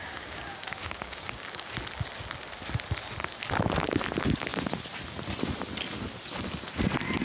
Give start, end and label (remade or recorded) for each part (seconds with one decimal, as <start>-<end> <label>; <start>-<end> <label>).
0.0-1.7 remade; 1.7-7.2 recorded